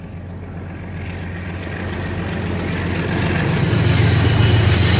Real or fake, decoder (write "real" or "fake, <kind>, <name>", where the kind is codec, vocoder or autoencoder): real